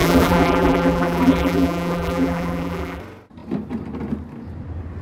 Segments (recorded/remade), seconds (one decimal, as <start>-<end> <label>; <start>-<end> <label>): 0.0-3.0 remade; 3.0-5.0 recorded